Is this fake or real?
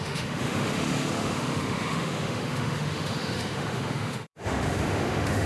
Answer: fake